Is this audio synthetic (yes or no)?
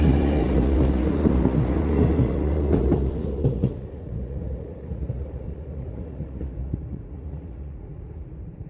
yes